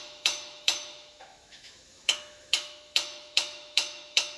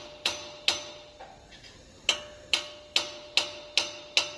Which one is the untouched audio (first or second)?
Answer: second